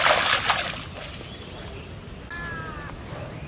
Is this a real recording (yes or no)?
yes